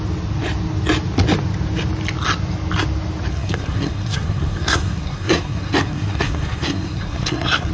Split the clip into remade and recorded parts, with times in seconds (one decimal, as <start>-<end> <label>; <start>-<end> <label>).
0.0-3.3 recorded; 3.3-7.7 remade